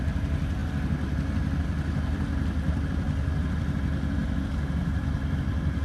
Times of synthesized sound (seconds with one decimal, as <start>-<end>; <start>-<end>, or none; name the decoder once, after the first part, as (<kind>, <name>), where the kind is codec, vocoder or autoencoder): none

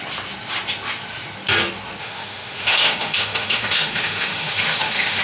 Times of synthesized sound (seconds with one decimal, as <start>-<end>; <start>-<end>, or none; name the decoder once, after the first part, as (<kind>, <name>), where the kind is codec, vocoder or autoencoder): 2.0-5.2 (autoencoder, DAC-VAE)

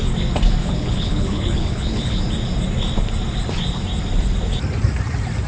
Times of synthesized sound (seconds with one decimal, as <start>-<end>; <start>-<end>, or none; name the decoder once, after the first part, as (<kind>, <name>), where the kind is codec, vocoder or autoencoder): 0.6-2.2 (codec, HILCodec)